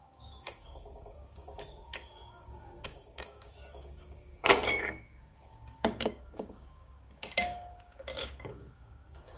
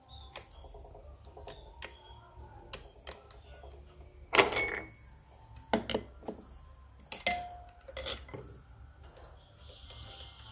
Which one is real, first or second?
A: second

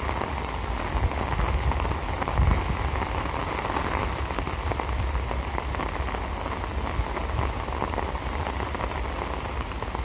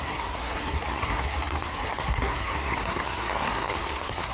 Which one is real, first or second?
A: first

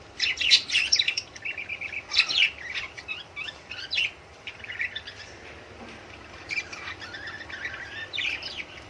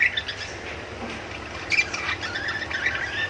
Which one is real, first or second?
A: second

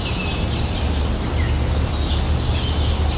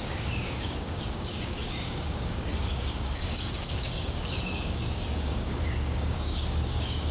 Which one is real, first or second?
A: first